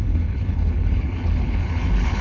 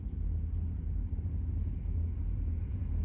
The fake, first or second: first